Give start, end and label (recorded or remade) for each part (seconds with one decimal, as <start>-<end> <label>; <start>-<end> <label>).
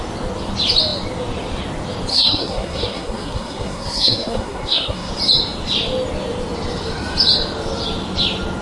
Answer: 0.0-2.1 recorded; 2.1-5.1 remade; 5.1-8.6 recorded